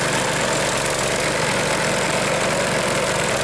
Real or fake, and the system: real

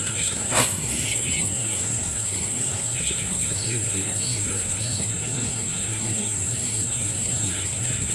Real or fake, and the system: fake, codec, SNAC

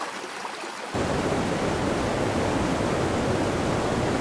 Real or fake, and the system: real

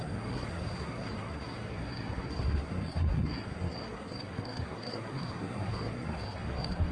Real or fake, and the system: fake, codec, SNAC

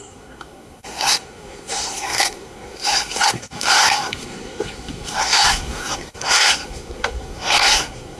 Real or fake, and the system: fake, codec, SNAC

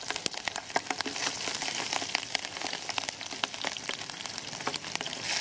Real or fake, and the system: real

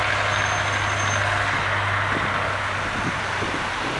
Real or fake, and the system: real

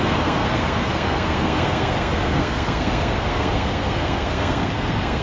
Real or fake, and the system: fake, codec, SNAC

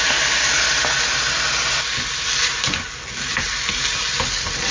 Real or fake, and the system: real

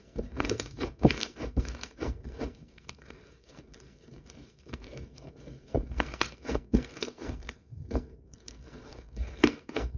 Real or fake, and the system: fake, codec, SNAC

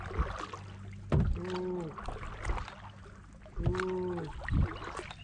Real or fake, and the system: real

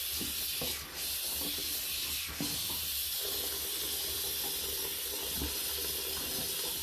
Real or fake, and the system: real